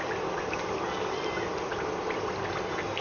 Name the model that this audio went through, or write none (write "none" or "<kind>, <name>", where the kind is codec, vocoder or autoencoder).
none